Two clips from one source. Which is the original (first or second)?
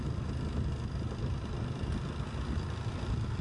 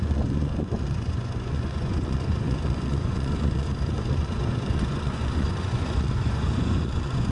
first